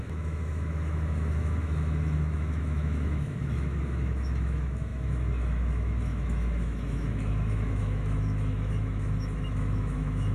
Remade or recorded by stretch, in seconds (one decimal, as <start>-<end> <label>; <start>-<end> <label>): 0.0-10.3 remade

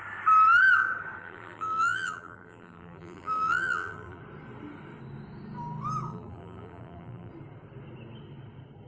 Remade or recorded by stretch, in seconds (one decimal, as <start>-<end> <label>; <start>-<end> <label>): 0.0-1.2 recorded; 1.2-4.2 remade; 4.2-6.1 recorded; 6.1-7.3 remade; 7.3-8.9 recorded

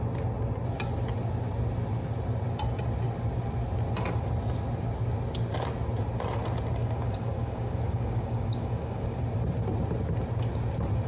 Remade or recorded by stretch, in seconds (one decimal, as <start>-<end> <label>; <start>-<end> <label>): 0.0-6.8 recorded; 6.8-9.2 remade; 9.2-11.1 recorded

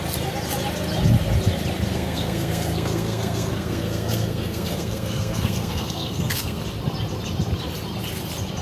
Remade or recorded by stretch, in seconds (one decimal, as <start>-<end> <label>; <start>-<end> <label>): 0.0-1.9 recorded; 1.9-6.6 remade; 6.6-8.6 recorded

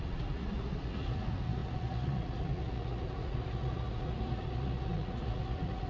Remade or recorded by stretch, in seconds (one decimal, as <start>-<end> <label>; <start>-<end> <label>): 0.0-5.9 remade

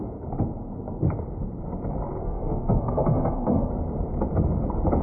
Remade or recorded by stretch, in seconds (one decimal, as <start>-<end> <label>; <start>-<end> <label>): 0.0-2.2 recorded; 2.2-3.7 remade; 3.7-5.0 recorded

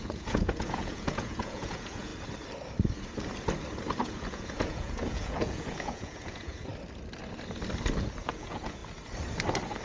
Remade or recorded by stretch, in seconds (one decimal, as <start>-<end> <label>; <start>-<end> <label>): 0.0-2.1 remade; 2.1-4.0 recorded; 4.0-6.7 remade; 6.7-8.2 recorded; 8.2-8.8 remade; 8.8-9.8 recorded